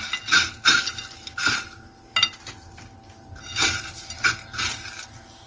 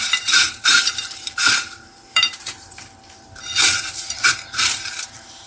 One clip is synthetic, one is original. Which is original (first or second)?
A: first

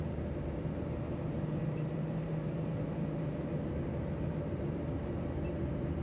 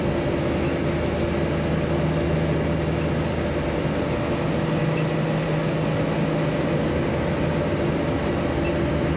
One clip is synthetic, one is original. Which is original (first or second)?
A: second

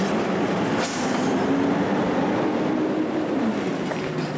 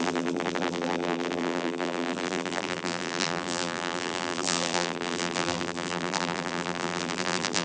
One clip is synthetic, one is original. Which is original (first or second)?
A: first